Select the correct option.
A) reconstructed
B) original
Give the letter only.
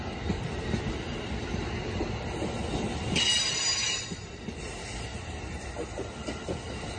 B